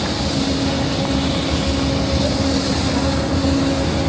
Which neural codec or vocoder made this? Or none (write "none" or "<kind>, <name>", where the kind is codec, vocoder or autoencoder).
none